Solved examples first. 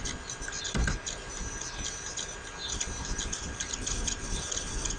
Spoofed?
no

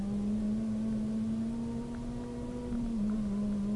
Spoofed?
no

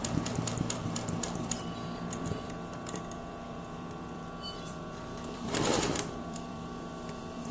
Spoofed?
yes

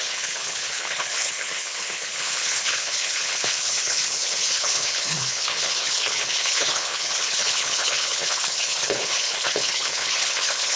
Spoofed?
yes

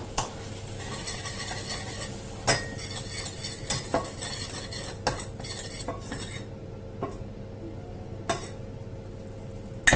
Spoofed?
no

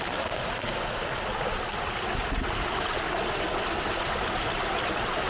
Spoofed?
no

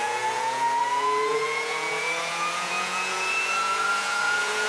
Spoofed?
yes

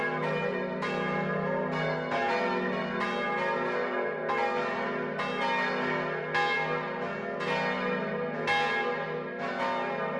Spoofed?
no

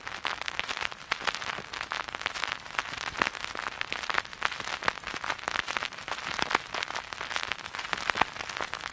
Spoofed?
no